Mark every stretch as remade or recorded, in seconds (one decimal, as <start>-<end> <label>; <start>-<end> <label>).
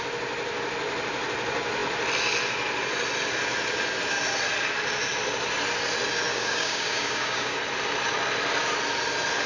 0.0-6.3 recorded; 6.3-7.6 remade; 7.6-9.5 recorded